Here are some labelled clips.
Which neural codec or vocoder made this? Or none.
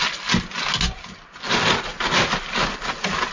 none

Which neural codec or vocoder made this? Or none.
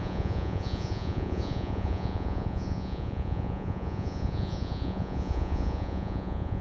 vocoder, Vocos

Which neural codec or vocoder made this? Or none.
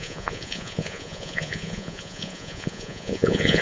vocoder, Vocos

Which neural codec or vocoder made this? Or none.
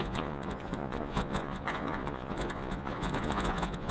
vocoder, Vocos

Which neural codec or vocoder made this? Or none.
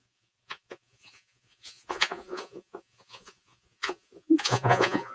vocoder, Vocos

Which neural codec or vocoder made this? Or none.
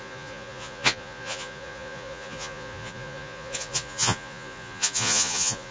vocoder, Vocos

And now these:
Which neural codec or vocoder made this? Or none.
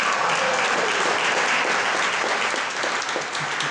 none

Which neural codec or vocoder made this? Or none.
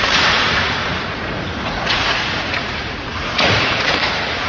vocoder, Vocos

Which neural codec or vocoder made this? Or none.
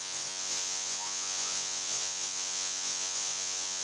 vocoder, Vocos